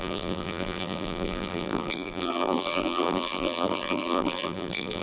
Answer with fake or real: fake